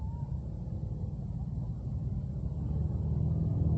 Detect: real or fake real